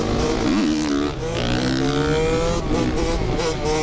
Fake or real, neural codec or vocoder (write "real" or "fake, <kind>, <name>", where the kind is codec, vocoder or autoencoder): real